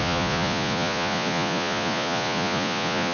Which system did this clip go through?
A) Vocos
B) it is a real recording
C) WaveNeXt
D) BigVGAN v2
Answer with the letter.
A